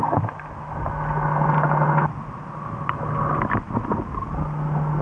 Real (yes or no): yes